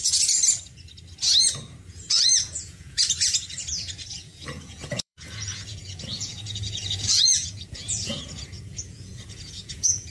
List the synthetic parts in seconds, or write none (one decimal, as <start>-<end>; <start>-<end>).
0.0-0.4; 1.9-10.1